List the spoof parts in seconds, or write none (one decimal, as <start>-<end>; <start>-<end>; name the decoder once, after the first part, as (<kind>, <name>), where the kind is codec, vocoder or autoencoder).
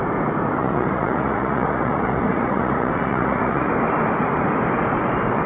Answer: 0.6-3.7 (vocoder, Vocos)